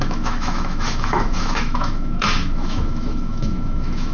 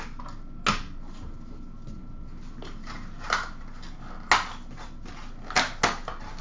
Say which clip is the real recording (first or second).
second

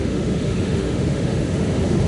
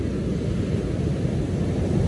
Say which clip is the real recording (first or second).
second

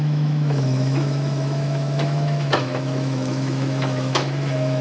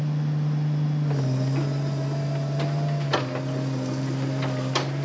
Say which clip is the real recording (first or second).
second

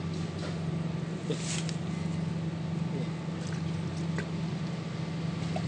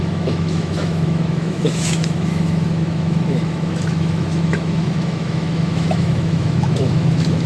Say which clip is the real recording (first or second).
first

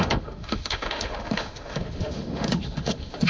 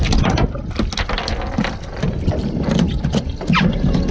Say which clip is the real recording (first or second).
second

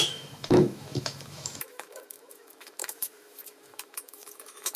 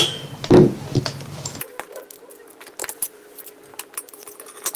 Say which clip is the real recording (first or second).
second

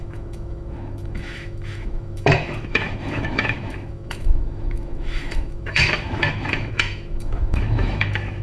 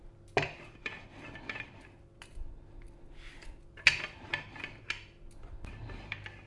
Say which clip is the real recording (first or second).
second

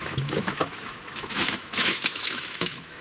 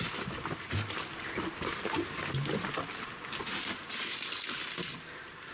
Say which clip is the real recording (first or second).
second